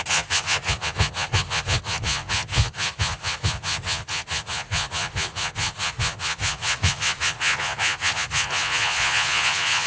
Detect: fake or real fake